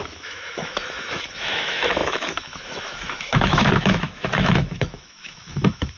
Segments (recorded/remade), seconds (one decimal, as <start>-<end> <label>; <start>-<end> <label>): 0.0-6.0 remade